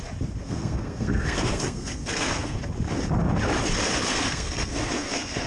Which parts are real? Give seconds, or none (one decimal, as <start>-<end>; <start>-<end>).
0.0-0.4; 2.6-4.1